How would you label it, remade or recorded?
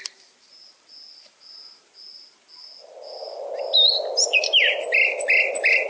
recorded